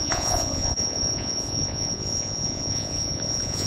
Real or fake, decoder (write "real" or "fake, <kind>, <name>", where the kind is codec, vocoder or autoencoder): fake, vocoder, Vocos